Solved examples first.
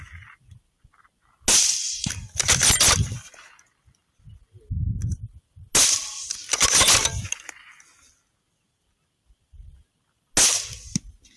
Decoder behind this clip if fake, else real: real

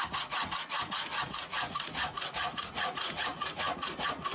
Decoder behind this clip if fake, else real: fake, vocoder, Vocos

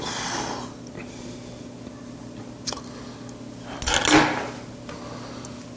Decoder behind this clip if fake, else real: real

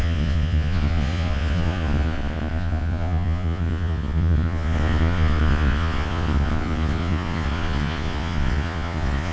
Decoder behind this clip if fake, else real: fake, vocoder, Vocos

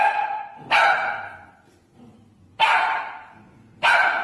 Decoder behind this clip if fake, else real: real